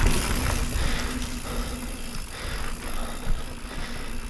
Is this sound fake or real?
real